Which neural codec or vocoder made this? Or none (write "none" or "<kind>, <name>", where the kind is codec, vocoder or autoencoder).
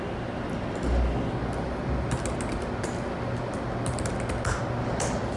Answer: none